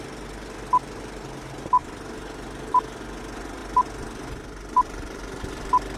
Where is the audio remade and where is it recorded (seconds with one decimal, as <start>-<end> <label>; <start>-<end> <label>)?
0.0-6.0 recorded